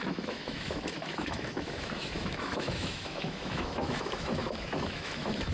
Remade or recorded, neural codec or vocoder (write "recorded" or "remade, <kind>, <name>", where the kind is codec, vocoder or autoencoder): remade, autoencoder, DAC-VAE